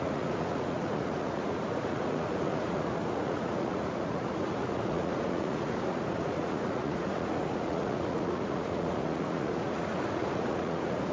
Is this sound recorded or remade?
remade